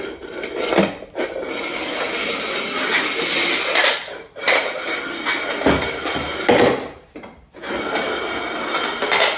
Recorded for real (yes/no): yes